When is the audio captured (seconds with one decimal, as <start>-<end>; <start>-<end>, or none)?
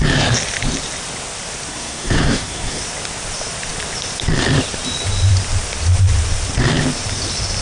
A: 0.0-1.7; 2.8-7.6